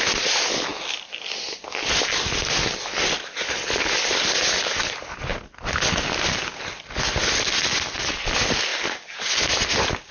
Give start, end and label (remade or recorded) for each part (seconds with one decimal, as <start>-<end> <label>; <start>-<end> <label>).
0.0-10.1 recorded